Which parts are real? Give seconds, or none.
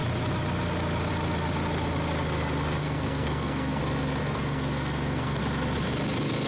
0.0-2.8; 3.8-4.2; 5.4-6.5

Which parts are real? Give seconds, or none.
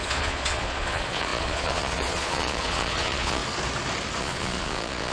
3.4-4.2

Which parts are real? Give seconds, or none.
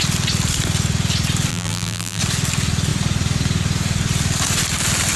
0.0-1.5; 2.2-5.2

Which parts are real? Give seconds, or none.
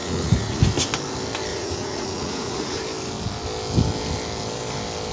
0.6-1.5; 2.8-5.1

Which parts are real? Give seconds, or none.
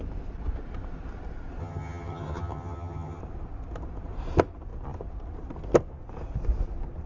0.0-1.6; 3.2-7.1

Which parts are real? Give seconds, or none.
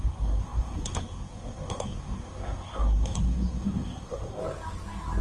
4.4-5.2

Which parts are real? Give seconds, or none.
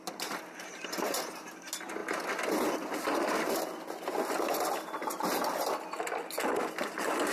0.0-7.3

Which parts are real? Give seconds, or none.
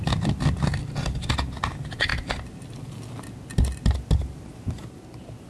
0.0-5.5